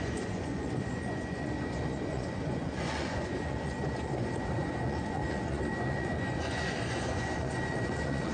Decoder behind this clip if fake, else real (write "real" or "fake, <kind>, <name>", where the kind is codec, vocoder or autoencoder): fake, vocoder, Vocos